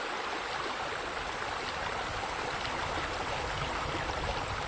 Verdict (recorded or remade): recorded